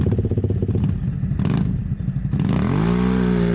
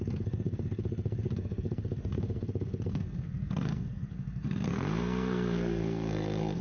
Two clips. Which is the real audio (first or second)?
first